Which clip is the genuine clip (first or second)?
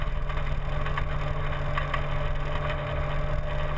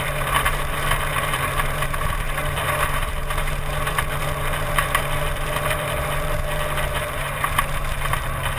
first